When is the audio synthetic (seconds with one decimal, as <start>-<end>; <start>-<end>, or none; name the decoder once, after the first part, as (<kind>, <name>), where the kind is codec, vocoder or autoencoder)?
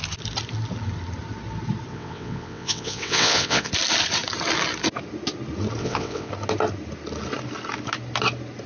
1.9-3.7 (vocoder, WaveNeXt); 5.8-6.3